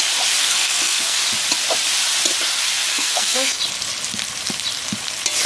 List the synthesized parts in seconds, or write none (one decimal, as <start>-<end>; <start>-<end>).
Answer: 0.4-1.2; 2.9-3.6